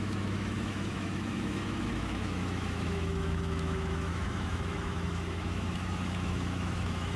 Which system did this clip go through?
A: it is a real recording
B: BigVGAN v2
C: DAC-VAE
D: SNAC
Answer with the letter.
C